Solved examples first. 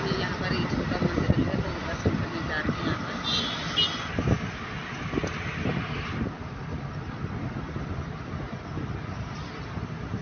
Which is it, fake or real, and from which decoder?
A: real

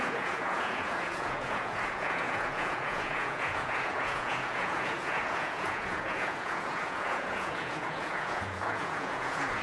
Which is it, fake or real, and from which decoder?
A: fake, vocoder, Vocos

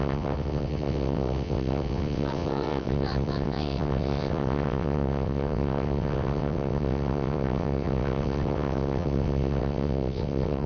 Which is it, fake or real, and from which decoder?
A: fake, vocoder, WaveNeXt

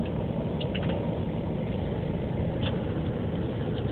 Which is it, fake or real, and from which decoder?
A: real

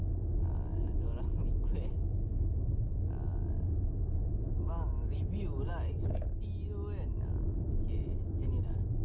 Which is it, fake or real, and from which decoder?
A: real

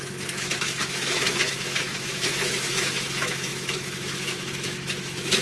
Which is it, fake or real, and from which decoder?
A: fake, autoencoder, DAC-VAE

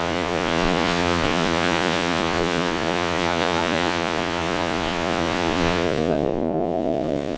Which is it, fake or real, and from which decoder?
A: fake, vocoder, Vocos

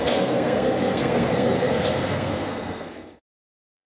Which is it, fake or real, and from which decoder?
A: fake, codec, SNAC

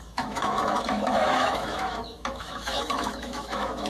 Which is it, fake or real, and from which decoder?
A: fake, autoencoder, DAC-VAE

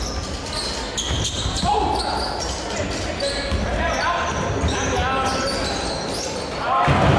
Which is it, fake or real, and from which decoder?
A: real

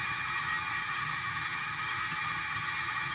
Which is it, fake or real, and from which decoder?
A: fake, vocoder, HiFi-GAN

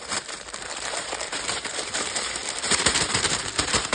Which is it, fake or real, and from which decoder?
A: fake, vocoder, BigVGAN v2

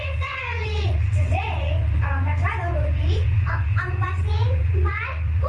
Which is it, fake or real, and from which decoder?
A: fake, vocoder, WaveNeXt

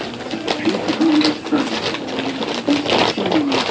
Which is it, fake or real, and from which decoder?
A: real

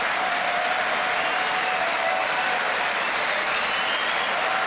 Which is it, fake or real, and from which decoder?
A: real